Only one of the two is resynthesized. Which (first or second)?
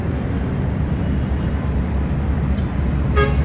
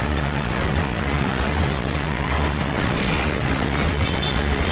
second